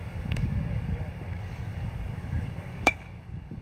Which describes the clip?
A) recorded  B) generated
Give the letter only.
B